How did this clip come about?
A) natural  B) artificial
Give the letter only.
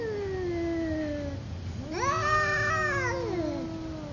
A